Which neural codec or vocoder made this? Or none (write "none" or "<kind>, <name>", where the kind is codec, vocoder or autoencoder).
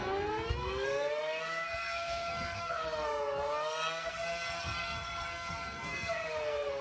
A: codec, SNAC